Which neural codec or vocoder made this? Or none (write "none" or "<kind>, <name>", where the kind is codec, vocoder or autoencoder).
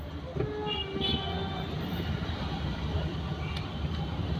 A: none